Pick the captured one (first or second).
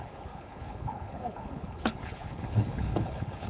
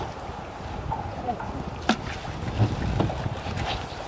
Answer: second